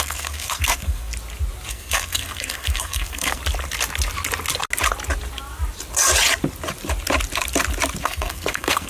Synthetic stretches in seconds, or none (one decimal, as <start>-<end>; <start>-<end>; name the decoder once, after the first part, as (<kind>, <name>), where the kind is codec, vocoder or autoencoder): 0.0-1.1 (codec, SNAC); 1.7-3.4; 8.0-8.9

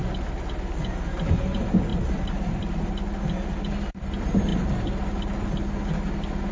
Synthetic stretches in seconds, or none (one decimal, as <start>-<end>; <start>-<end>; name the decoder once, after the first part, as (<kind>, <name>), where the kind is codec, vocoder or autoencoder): 1.9-3.2 (vocoder, BigVGAN v2)

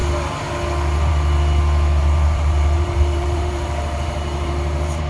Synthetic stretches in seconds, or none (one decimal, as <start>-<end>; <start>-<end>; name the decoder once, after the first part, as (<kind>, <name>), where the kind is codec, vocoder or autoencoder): 2.0-5.1 (vocoder, BigVGAN v2)